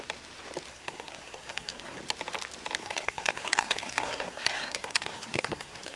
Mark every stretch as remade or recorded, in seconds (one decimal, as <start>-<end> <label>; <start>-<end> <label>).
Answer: 0.0-0.7 recorded; 0.7-2.0 remade; 2.0-2.8 recorded; 2.8-6.0 remade